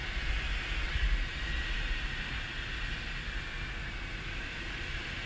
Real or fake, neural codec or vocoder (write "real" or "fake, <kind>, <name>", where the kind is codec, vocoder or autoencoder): real